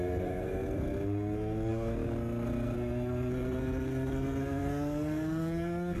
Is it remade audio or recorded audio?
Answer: remade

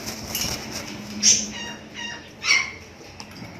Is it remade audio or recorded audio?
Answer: recorded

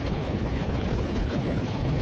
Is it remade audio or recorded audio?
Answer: remade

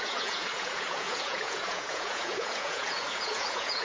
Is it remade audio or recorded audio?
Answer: remade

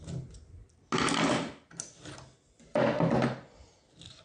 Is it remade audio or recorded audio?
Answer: recorded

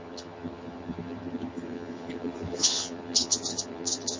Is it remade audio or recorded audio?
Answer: remade